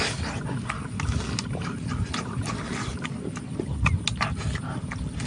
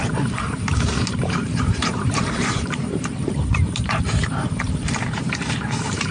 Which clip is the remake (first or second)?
second